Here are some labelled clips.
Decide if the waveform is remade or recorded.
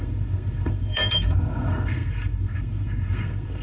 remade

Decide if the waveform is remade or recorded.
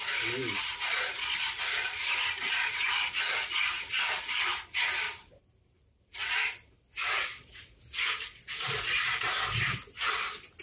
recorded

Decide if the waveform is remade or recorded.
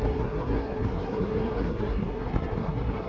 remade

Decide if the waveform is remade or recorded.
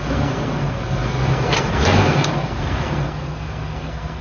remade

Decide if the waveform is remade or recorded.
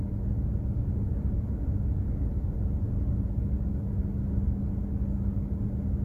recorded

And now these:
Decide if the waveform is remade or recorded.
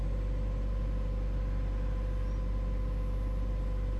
recorded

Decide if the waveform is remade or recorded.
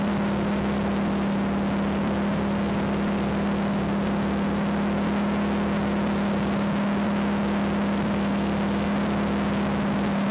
recorded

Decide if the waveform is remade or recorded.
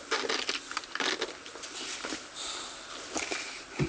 recorded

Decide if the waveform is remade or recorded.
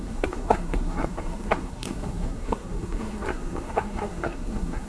remade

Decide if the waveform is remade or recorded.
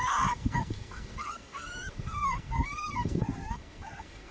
remade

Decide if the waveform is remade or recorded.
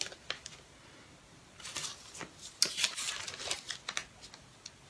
recorded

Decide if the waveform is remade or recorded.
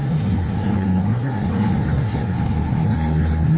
remade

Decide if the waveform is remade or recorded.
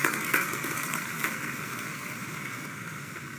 remade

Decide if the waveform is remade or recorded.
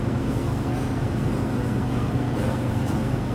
remade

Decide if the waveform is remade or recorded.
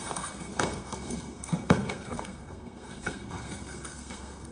remade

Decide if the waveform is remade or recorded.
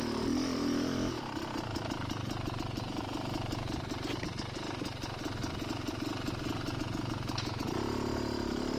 recorded